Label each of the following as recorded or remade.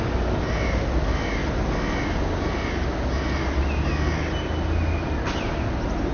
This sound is recorded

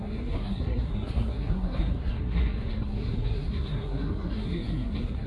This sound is remade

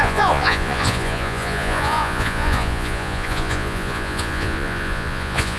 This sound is remade